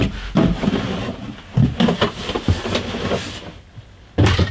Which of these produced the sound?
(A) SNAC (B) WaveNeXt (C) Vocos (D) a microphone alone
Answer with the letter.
D